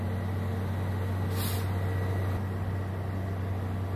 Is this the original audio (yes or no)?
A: yes